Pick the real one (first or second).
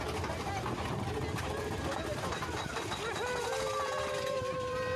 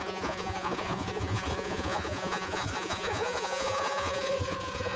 first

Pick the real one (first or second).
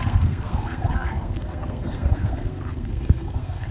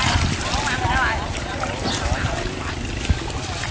second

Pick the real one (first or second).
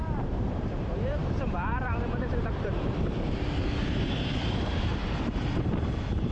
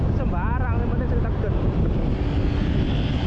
second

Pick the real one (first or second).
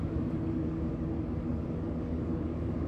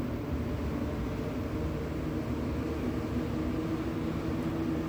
second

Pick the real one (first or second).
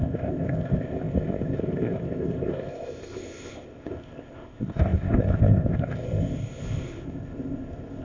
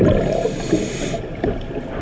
second